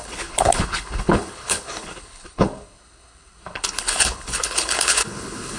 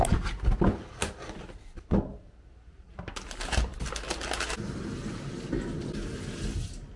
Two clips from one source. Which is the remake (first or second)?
first